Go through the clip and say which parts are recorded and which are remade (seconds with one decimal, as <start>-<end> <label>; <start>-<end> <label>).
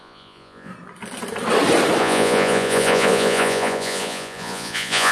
0.0-0.7 remade; 0.7-2.0 recorded; 2.0-5.1 remade